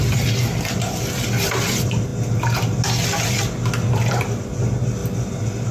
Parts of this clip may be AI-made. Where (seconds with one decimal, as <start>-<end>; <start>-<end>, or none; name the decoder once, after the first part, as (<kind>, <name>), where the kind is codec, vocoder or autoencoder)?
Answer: none